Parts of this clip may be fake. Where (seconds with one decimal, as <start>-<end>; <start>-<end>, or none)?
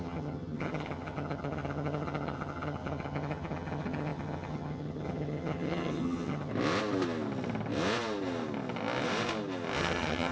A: 0.0-6.5; 9.8-10.3